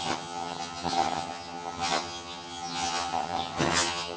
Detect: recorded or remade remade